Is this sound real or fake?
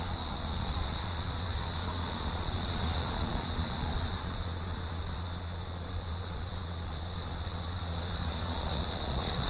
fake